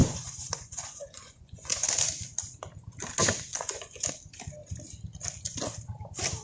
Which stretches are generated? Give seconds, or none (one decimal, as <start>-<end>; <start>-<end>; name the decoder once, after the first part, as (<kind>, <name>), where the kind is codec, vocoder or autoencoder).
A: 0.0-1.9 (vocoder, Vocos); 3.5-4.1